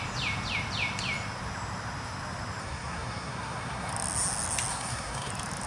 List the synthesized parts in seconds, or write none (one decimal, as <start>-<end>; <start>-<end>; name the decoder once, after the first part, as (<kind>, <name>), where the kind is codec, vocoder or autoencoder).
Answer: 2.6-3.9 (codec, SNAC); 4.7-5.3